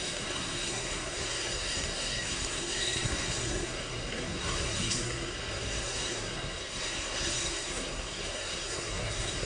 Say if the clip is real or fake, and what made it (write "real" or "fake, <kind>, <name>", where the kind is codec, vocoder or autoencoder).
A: fake, codec, SNAC